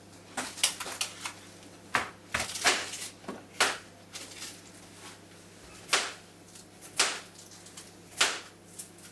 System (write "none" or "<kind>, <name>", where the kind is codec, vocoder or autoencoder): none